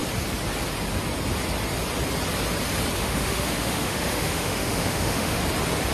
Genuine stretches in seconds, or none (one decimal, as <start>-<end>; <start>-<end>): 0.0-3.0; 5.4-5.9